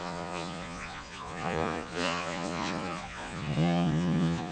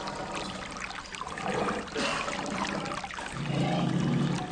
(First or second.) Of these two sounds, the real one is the second